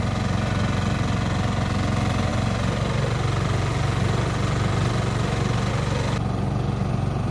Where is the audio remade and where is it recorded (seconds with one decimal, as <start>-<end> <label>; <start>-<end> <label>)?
0.0-7.3 recorded